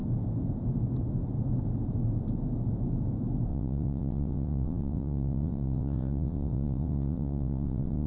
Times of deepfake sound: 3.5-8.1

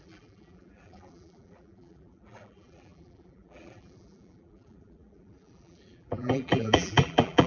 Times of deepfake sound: 0.0-7.5

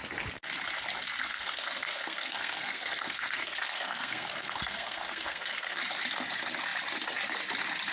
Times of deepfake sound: 1.3-5.8

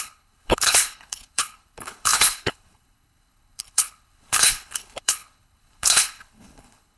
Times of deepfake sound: 0.0-7.0

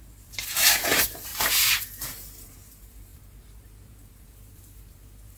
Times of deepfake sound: 0.0-1.3; 2.0-5.4